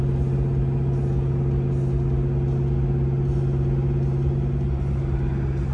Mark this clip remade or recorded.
recorded